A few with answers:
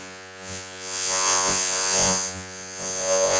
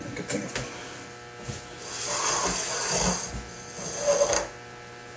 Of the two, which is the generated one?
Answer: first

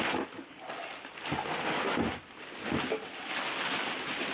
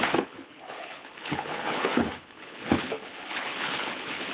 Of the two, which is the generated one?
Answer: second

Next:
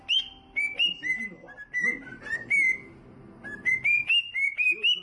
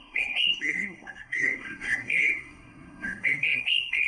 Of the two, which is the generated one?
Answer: second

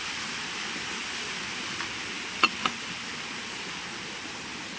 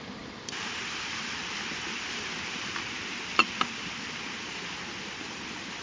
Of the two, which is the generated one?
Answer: second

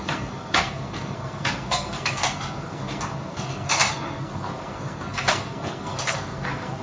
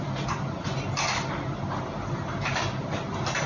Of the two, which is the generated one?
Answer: first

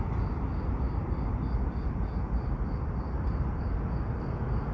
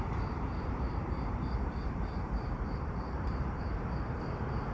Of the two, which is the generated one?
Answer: second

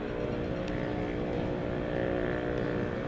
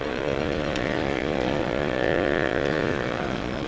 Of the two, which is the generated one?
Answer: second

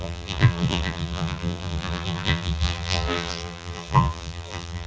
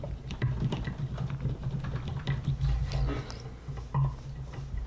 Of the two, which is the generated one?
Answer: first